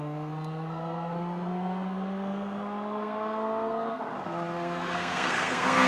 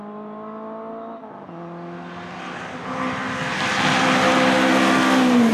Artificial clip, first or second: first